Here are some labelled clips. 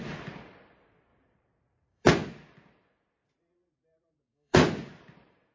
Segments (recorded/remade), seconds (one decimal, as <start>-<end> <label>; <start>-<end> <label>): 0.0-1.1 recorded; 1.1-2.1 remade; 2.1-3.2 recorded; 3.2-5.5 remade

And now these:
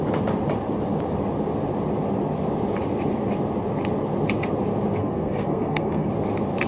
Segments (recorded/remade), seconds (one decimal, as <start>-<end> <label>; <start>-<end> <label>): 0.0-5.0 recorded; 5.0-6.1 remade; 6.1-6.7 recorded

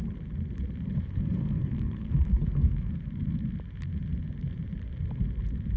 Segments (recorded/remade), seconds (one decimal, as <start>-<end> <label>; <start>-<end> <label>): 0.0-1.6 recorded; 1.6-2.9 remade; 2.9-5.8 recorded